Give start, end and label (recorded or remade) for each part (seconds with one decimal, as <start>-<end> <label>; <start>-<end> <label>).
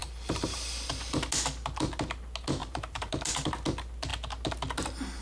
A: 0.0-0.9 remade; 0.9-2.6 recorded; 2.6-3.1 remade; 3.1-5.2 recorded